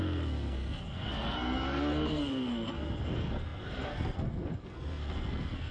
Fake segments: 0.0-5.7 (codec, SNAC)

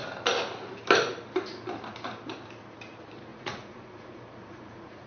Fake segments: 3.3-5.1 (vocoder, Vocos)

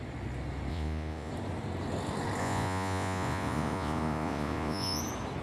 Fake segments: 0.7-1.3 (vocoder, Vocos); 2.4-5.0

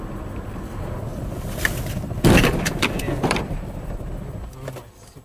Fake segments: 1.1-4.2 (vocoder, BigVGAN v2)

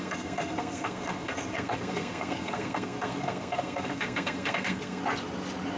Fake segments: 0.0-5.0 (codec, SNAC)

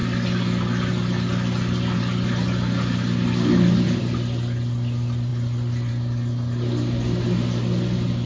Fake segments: none